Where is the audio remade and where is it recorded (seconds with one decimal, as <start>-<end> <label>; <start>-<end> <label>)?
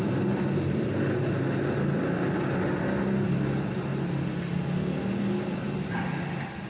0.0-6.7 recorded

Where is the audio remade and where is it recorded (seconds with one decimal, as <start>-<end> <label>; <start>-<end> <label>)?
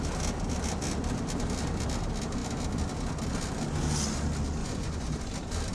0.0-4.6 recorded; 4.6-5.3 remade; 5.3-5.7 recorded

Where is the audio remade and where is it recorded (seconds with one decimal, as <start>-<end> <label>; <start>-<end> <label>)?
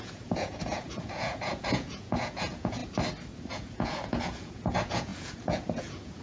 0.0-2.8 remade; 2.8-3.5 recorded; 3.5-6.2 remade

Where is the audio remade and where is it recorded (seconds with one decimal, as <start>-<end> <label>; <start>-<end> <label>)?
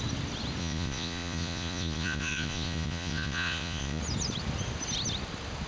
0.0-0.6 recorded; 0.6-4.0 remade; 4.0-5.7 recorded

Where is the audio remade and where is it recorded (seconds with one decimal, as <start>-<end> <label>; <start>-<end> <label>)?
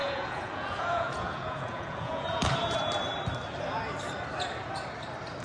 0.0-2.4 remade; 2.4-5.4 recorded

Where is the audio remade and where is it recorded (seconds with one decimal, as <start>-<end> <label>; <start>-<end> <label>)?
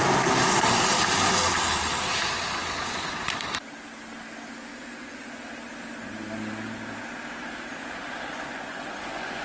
0.0-4.7 recorded; 4.7-5.4 remade; 5.4-7.8 recorded; 7.8-9.4 remade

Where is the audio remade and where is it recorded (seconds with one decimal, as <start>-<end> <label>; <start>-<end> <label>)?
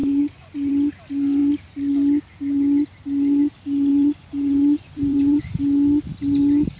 0.0-0.7 remade; 0.7-3.9 recorded; 3.9-5.6 remade; 5.6-6.8 recorded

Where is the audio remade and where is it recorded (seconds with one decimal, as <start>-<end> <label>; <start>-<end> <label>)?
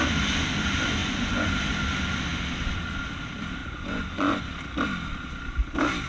0.0-1.0 recorded; 1.0-1.5 remade; 1.5-3.6 recorded; 3.6-4.4 remade; 4.4-6.1 recorded